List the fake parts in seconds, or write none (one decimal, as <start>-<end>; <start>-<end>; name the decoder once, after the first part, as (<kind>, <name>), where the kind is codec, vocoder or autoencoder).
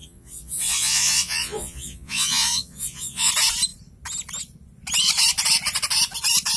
0.0-3.3 (vocoder, Vocos)